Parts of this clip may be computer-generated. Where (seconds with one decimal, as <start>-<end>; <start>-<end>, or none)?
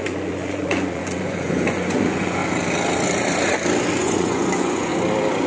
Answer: 0.0-2.4; 4.0-4.9